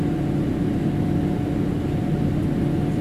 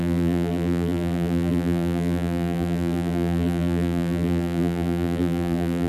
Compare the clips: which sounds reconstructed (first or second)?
second